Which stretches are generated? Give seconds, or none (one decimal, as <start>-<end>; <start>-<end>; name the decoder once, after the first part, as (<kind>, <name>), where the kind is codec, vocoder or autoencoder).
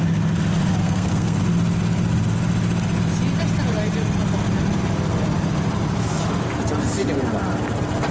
0.8-1.4 (codec, SNAC)